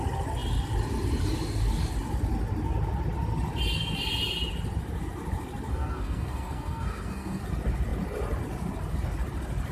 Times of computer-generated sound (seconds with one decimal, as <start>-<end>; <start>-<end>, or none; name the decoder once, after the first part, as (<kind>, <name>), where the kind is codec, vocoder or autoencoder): 5.7-7.4 (codec, SNAC)